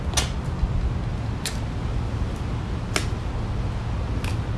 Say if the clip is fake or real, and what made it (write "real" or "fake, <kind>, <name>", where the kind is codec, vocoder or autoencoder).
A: real